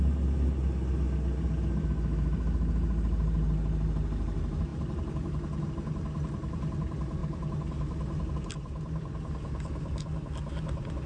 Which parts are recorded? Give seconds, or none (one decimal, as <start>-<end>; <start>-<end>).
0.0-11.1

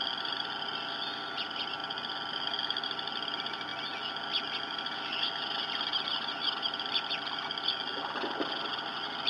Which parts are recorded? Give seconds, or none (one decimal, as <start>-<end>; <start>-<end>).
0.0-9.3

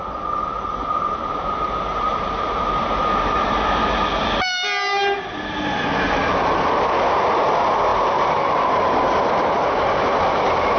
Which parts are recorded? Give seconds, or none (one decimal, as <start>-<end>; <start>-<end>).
0.0-0.8; 3.8-7.9; 9.7-10.8

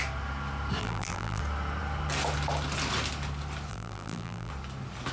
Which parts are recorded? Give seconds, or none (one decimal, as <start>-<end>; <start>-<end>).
0.0-0.8; 1.4-3.7; 4.5-5.1

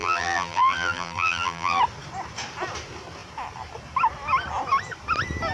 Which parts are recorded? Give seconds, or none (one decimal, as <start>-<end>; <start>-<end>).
1.8-5.5

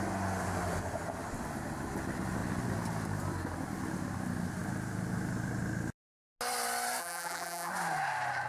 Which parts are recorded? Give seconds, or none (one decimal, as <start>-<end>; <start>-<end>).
0.0-7.0; 7.7-8.5

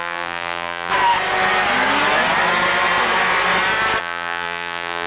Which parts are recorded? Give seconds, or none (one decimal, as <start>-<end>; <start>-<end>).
0.9-4.0